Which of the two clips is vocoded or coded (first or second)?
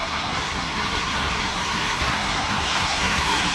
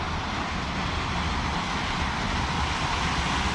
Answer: first